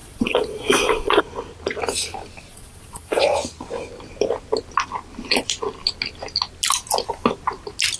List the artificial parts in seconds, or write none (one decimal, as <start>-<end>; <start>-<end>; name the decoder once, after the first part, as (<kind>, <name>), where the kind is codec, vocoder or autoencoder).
0.0-1.2 (vocoder, Vocos); 2.5-3.2